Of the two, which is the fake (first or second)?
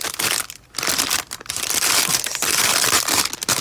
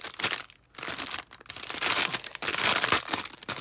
first